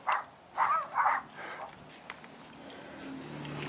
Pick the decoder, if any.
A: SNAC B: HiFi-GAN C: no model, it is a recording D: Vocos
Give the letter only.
C